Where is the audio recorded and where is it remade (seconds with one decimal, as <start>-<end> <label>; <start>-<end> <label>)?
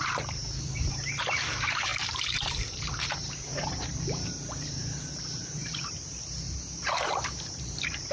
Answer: 0.0-8.1 remade